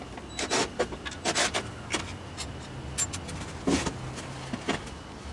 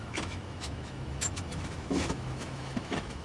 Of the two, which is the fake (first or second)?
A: second